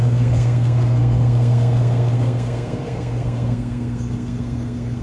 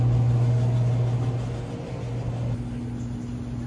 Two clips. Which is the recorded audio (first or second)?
second